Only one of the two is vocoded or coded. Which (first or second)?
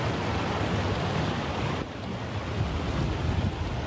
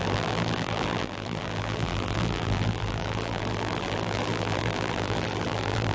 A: second